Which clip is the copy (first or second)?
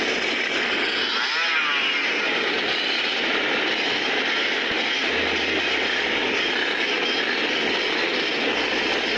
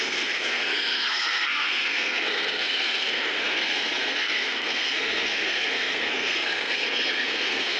second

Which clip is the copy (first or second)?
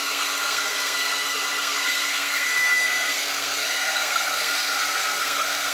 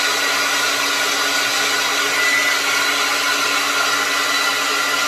first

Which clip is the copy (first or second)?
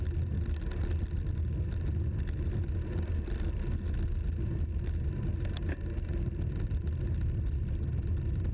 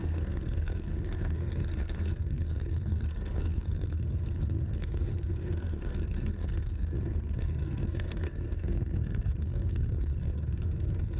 second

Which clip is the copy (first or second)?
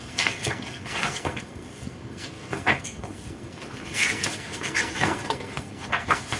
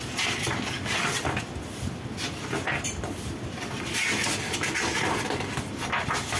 first